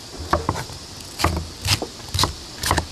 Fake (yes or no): no